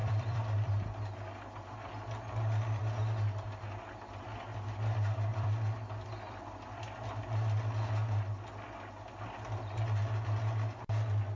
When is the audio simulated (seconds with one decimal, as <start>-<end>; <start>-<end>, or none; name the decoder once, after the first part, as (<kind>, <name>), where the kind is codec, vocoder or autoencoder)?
0.0-0.7 (vocoder, BigVGAN v2); 5.3-6.8